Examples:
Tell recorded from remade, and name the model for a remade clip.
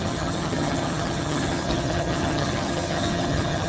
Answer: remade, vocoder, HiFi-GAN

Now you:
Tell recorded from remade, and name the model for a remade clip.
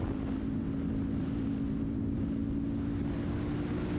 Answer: recorded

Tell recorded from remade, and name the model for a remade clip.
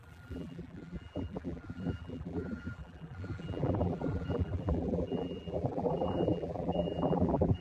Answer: remade, vocoder, BigVGAN v2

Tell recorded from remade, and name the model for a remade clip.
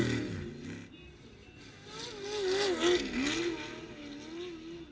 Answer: recorded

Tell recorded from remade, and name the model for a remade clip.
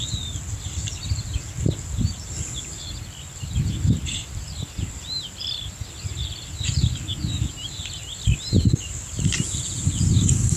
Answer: recorded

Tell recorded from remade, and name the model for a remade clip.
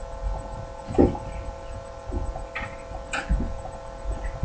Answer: recorded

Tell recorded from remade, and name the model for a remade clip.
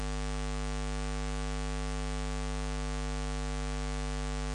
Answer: recorded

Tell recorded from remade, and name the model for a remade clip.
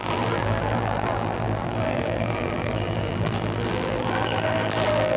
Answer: remade, vocoder, BigVGAN v2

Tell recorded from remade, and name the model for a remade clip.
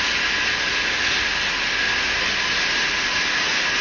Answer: recorded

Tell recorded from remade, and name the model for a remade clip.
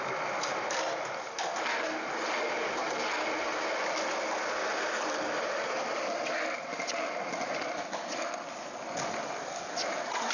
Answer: recorded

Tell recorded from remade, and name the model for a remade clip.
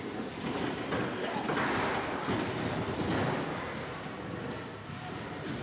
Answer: recorded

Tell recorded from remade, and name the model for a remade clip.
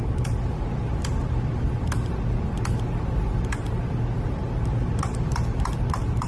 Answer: recorded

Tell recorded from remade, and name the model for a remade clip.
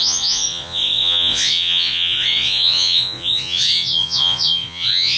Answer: remade, vocoder, Vocos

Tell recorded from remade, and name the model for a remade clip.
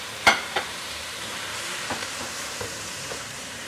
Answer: remade, vocoder, BigVGAN v2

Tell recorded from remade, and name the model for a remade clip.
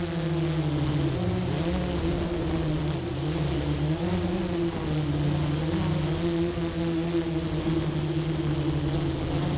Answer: recorded